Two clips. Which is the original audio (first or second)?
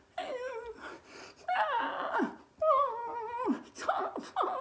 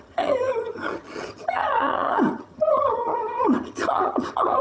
first